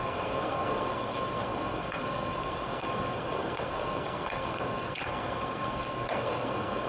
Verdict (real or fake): fake